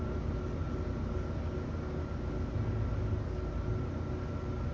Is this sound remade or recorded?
recorded